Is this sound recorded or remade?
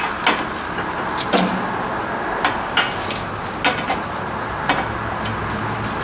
recorded